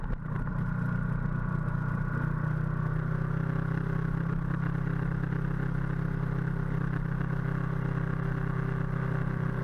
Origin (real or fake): real